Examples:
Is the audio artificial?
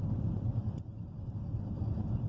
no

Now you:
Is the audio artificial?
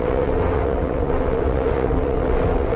yes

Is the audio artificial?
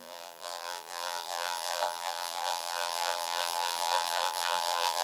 yes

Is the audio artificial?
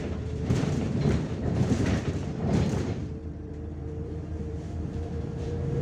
yes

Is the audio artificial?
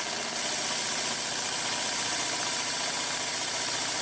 no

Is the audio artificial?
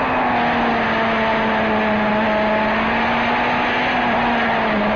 no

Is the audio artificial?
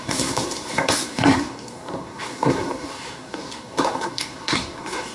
yes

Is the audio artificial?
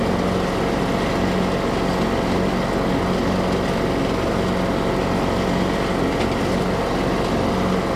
no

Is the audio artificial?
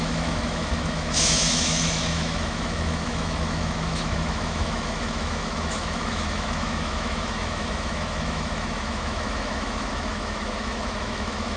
yes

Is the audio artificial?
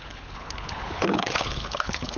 yes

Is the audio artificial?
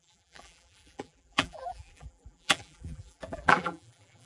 yes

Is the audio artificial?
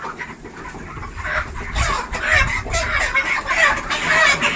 no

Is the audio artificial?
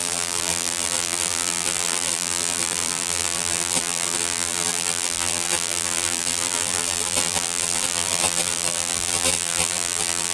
yes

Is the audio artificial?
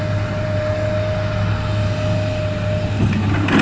no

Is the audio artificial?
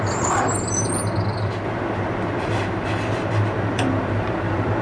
yes